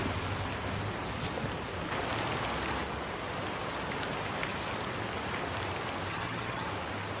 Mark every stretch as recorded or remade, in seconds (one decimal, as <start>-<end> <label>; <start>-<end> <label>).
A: 0.0-6.1 recorded; 6.1-6.7 remade; 6.7-7.2 recorded